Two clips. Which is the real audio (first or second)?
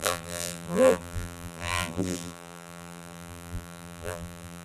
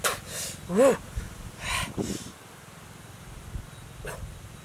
second